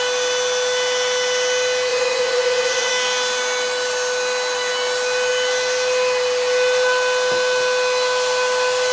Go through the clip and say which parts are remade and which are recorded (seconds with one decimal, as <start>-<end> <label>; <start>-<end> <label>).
0.0-1.9 recorded; 1.9-2.9 remade; 2.9-8.9 recorded

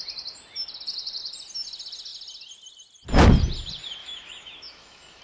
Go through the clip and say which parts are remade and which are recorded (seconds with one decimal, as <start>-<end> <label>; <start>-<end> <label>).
0.0-4.0 recorded; 4.0-5.2 remade

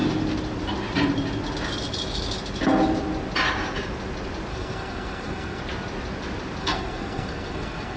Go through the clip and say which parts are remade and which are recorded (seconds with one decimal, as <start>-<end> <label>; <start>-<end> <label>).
0.0-4.5 recorded; 4.5-5.6 remade; 5.6-6.6 recorded; 6.6-8.0 remade

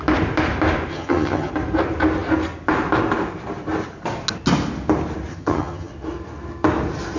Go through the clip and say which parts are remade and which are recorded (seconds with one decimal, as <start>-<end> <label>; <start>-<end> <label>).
0.0-0.9 recorded; 0.9-1.5 remade; 1.5-5.3 recorded; 5.3-5.9 remade; 5.9-7.2 recorded